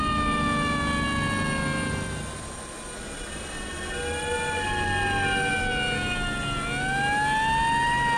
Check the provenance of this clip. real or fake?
real